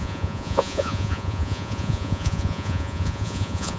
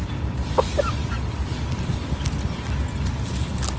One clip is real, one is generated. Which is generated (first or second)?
first